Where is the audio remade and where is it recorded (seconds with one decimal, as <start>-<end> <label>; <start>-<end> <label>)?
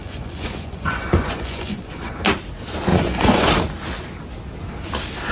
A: 0.0-2.1 remade; 2.1-2.9 recorded; 2.9-3.5 remade; 3.5-5.3 recorded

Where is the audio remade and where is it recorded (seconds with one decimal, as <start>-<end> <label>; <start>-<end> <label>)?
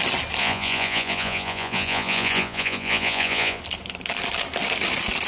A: 0.0-0.4 recorded; 0.4-3.6 remade; 3.6-5.3 recorded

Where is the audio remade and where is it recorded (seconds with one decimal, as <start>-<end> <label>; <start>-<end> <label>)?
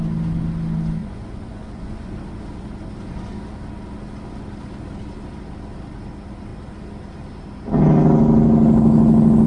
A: 0.0-1.0 recorded; 1.0-2.1 remade; 2.1-9.5 recorded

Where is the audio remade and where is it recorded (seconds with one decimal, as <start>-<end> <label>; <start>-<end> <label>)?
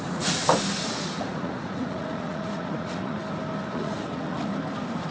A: 0.0-0.4 remade; 0.4-1.0 recorded; 1.0-3.2 remade; 3.2-3.7 recorded; 3.7-4.5 remade; 4.5-5.1 recorded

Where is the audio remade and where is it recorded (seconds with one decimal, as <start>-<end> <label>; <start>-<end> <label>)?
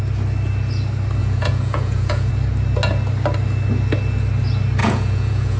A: 0.0-1.2 recorded; 1.2-2.3 remade; 2.3-4.8 recorded; 4.8-5.6 remade